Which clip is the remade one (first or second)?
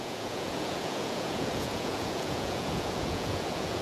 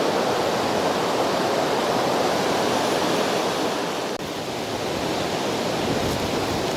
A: first